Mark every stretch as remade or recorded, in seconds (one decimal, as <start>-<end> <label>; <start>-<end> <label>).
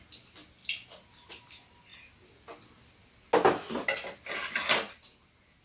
0.0-5.6 recorded